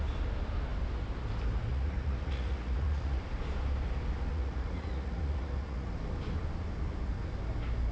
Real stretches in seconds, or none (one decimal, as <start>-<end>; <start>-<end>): 0.0-1.7; 3.2-4.3; 5.9-7.9